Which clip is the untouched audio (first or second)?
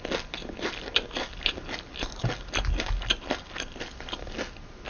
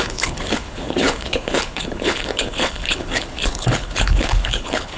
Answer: first